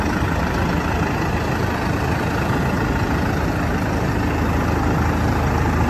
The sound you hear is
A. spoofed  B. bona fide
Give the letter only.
B